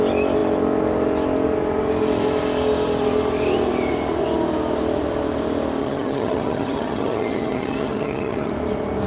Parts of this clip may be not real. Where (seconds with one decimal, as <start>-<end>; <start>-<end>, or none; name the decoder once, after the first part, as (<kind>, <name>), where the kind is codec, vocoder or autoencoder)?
5.8-8.5 (vocoder, HiFi-GAN)